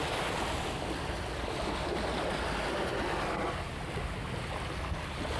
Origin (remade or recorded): recorded